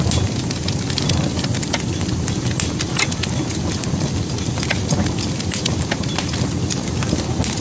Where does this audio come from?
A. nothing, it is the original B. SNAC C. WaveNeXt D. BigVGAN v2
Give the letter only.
A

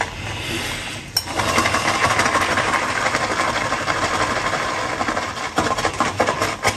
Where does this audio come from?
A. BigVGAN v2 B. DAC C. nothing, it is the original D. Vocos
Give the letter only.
C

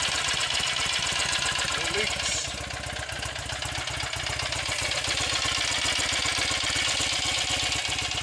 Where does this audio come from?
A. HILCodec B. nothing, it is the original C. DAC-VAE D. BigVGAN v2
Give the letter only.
B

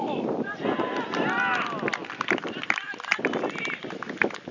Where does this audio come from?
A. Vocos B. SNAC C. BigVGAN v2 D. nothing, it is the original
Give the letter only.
D